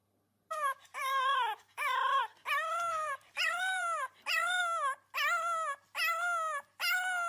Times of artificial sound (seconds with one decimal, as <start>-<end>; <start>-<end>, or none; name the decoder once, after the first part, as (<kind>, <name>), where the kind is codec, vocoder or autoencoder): 0.0-2.2 (vocoder, BigVGAN v2); 2.9-4.6